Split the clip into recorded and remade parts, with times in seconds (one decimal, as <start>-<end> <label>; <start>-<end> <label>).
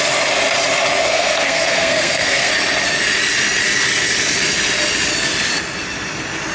0.0-1.0 recorded; 1.0-2.5 remade; 2.5-6.5 recorded